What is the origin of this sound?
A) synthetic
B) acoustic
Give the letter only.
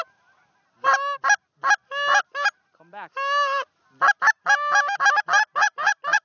B